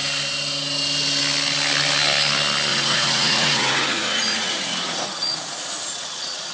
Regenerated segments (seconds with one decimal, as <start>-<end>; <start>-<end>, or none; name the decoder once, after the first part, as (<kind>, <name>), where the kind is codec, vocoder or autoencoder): 2.7-6.5 (vocoder, Vocos)